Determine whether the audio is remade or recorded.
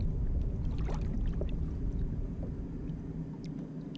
remade